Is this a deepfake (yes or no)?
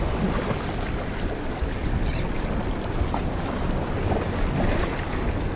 no